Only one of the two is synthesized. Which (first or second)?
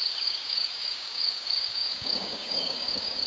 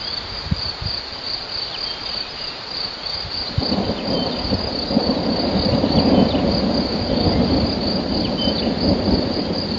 first